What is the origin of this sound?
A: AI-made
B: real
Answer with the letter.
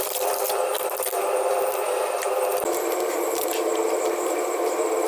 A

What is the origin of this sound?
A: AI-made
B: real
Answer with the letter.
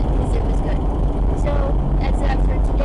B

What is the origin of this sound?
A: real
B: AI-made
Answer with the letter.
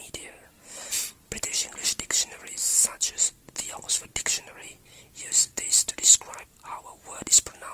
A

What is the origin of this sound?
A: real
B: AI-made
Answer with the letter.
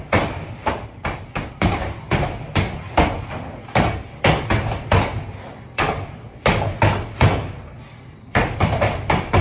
A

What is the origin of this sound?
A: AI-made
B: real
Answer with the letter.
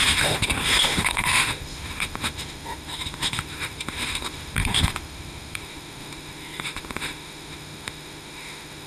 A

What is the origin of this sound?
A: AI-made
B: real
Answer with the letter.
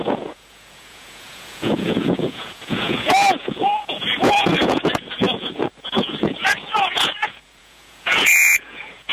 A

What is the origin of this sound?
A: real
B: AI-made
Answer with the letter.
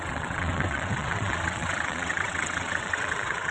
B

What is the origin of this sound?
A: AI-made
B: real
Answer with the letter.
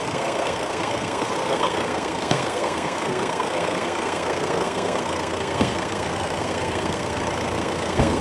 A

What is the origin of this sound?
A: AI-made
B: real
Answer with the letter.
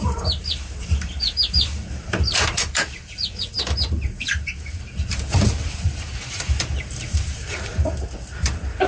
A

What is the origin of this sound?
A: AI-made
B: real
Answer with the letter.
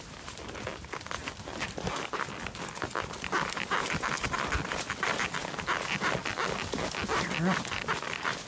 B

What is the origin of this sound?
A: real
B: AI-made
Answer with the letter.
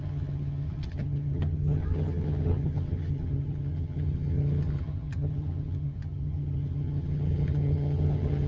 B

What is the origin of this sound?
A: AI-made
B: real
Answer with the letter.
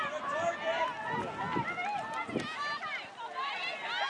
B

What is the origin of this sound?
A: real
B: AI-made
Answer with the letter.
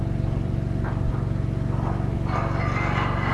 A